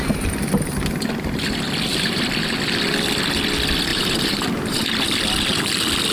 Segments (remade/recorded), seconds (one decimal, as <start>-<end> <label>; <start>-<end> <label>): 0.0-1.9 recorded; 1.9-2.5 remade; 2.5-3.9 recorded; 3.9-4.9 remade; 4.9-6.1 recorded